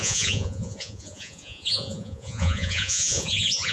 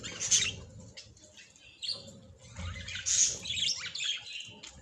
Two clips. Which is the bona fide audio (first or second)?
second